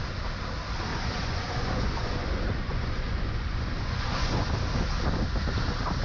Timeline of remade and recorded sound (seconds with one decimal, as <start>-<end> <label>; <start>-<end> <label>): 0.0-0.9 recorded; 0.9-4.5 remade; 4.5-6.0 recorded